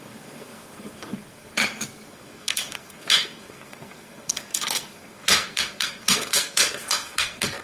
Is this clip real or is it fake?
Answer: fake